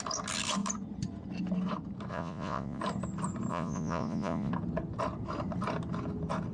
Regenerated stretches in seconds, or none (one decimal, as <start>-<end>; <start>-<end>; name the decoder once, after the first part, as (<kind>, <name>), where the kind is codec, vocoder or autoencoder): 2.1-2.8 (vocoder, Vocos); 3.5-4.5